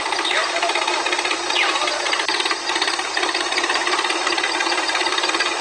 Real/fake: real